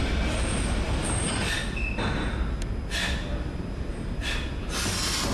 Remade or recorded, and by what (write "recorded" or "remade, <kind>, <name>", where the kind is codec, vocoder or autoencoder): recorded